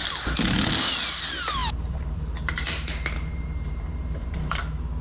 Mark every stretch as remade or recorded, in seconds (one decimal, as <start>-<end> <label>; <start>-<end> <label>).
0.0-1.6 recorded; 1.6-4.6 remade; 4.6-5.0 recorded